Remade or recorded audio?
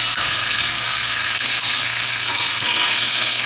remade